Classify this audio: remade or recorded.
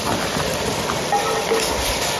remade